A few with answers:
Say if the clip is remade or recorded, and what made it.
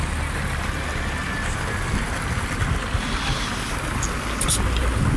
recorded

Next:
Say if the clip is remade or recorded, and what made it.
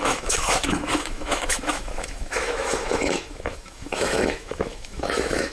remade, autoencoder, DAC-VAE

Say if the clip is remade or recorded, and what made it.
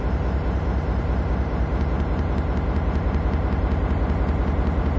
remade, vocoder, BigVGAN v2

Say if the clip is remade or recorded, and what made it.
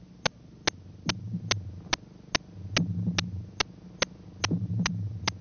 recorded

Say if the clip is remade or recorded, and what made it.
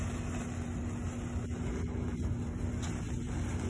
recorded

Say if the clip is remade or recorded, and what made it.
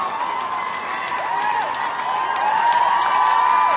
recorded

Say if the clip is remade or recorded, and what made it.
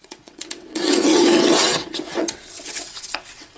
remade, vocoder, WaveNeXt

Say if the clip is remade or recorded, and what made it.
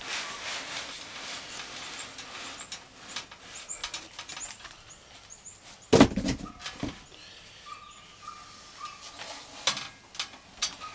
recorded